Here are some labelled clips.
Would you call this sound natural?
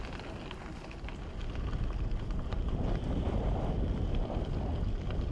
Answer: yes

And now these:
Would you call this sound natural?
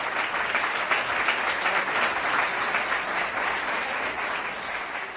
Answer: yes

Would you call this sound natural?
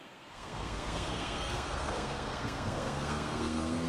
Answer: no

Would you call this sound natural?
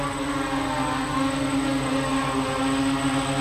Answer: yes